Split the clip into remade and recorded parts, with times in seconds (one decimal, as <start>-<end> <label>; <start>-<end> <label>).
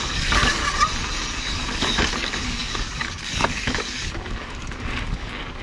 0.0-0.6 remade; 0.6-1.4 recorded; 1.4-5.6 remade